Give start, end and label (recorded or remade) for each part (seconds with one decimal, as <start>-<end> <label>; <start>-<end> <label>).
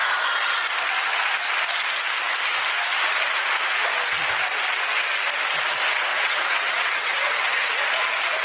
0.0-6.1 recorded; 6.1-7.7 remade; 7.7-8.4 recorded